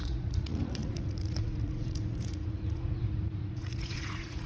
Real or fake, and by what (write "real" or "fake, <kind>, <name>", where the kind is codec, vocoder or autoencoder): fake, vocoder, Vocos